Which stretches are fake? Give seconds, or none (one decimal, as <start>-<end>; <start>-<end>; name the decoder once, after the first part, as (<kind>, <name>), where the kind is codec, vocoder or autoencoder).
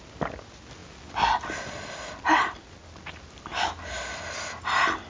none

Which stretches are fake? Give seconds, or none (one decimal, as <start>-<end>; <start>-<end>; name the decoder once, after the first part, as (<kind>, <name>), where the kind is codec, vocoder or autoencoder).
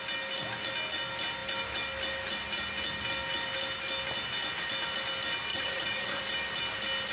5.5-6.2 (vocoder, HiFi-GAN)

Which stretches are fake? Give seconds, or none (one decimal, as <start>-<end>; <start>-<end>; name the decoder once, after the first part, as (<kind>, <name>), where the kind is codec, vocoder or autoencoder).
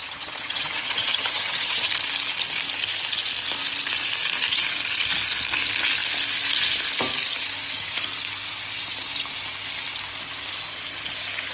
0.0-1.9 (vocoder, HiFi-GAN)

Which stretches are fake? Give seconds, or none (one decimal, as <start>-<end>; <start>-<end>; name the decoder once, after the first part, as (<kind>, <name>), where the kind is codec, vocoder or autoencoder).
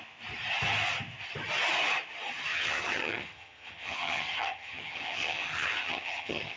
2.5-6.6 (vocoder, HiFi-GAN)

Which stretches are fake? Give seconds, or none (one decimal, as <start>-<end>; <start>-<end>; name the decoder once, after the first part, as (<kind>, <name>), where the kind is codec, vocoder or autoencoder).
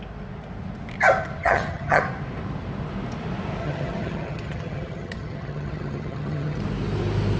1.4-2.0 (vocoder, HiFi-GAN); 3.6-6.6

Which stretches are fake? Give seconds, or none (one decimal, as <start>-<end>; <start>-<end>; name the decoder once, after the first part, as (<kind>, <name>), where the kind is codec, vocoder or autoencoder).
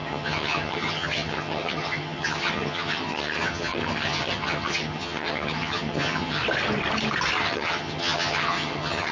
0.0-6.4 (vocoder, HiFi-GAN); 7.4-9.1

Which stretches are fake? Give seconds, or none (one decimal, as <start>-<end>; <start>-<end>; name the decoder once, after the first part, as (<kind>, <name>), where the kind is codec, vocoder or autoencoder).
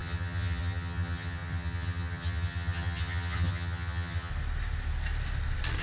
0.0-4.3 (vocoder, HiFi-GAN)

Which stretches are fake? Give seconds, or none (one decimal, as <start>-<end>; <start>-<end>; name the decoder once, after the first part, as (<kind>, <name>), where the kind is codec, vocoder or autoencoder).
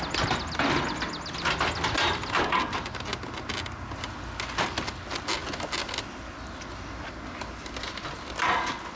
none